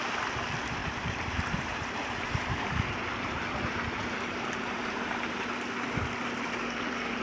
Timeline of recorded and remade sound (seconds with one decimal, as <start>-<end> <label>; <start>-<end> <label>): 0.0-0.8 recorded; 0.8-5.1 remade; 5.1-7.2 recorded